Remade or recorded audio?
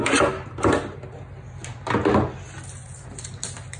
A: recorded